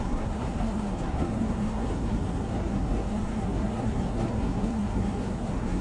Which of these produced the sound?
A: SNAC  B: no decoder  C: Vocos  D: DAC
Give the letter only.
A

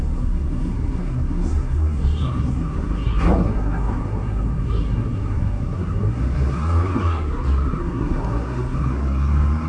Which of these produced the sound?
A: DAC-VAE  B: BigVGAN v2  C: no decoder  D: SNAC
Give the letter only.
D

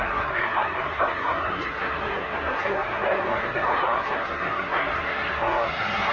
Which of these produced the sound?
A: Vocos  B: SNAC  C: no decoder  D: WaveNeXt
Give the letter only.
B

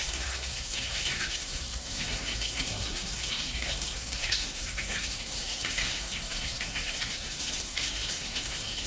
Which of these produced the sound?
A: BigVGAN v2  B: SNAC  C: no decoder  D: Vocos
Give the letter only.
B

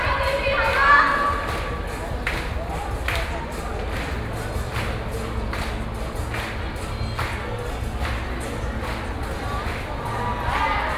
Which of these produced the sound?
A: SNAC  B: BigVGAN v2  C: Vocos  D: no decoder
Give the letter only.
D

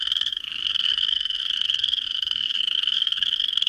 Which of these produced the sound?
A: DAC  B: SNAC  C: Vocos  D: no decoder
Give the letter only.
B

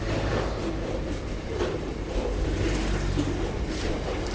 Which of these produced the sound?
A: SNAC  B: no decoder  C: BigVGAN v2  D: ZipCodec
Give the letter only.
B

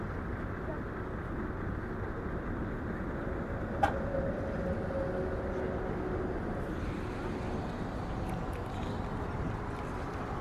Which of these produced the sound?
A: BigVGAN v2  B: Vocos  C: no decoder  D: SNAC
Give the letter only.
C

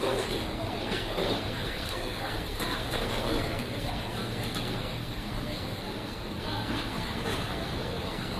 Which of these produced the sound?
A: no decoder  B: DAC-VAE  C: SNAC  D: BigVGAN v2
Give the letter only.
C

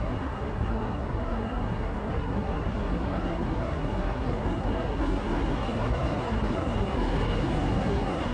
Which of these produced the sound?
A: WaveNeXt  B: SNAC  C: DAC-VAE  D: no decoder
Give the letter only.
B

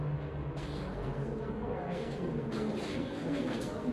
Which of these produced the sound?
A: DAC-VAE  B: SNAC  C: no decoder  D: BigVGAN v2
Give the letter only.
B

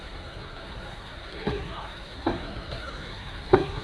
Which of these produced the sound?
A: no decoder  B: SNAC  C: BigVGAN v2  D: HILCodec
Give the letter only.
B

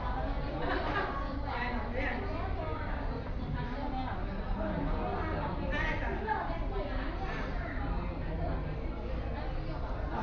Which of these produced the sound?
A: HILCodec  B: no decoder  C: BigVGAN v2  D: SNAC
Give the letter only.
B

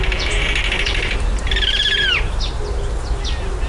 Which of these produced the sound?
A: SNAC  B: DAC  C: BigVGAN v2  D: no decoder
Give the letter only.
D